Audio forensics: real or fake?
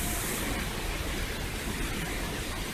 real